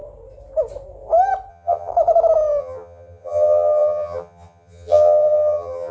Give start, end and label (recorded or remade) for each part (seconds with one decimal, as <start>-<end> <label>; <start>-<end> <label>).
0.0-1.5 recorded; 1.5-1.9 remade; 1.9-2.6 recorded; 2.6-5.9 remade